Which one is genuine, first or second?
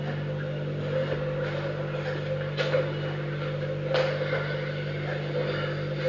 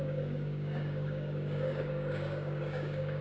first